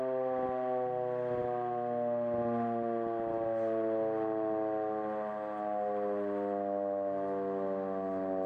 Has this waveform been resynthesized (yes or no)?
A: no